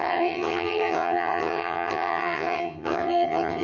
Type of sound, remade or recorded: remade